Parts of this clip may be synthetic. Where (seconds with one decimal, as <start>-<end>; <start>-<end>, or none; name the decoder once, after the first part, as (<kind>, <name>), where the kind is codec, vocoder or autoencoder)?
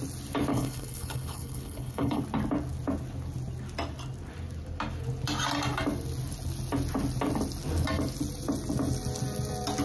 0.5-2.2 (codec, HILCodec)